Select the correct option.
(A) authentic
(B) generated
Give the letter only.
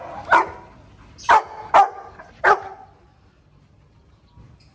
A